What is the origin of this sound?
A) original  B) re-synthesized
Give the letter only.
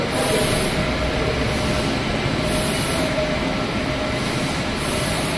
A